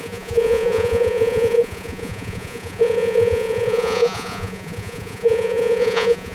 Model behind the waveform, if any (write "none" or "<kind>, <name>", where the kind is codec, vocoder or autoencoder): vocoder, Vocos